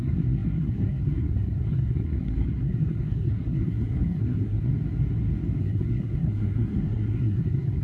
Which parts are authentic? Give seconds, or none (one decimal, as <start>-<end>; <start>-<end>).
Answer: 4.7-5.6